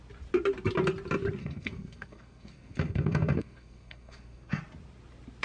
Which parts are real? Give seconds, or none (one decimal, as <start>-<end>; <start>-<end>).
0.0-1.4; 4.6-5.4